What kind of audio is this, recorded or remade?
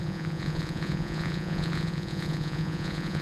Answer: remade